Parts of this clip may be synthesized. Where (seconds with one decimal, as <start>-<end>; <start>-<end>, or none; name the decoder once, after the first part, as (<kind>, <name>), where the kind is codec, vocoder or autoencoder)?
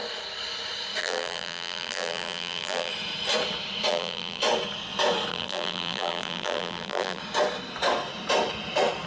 1.0-2.9 (vocoder, BigVGAN v2); 3.9-4.4; 5.3-7.2